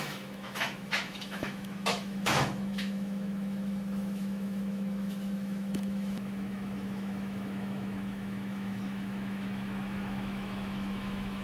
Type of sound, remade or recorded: remade